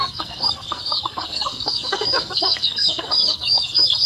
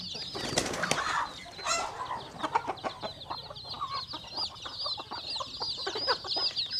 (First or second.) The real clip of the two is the second